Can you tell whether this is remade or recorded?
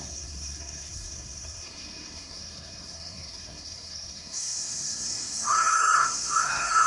remade